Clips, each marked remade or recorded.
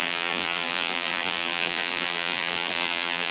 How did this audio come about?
remade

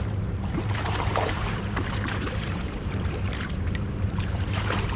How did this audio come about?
remade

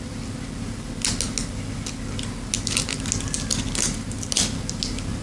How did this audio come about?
recorded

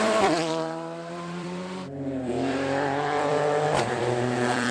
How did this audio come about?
remade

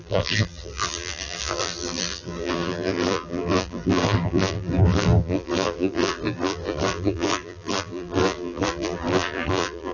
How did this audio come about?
remade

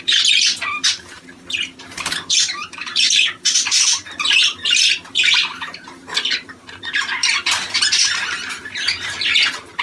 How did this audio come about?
remade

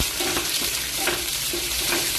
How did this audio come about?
remade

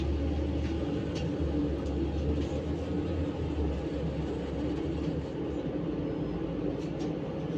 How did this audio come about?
recorded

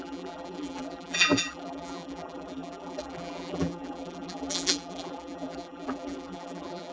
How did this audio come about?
remade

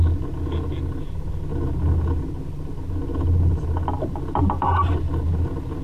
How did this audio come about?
recorded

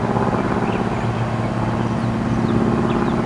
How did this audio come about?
recorded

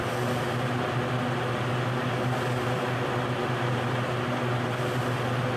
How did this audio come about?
recorded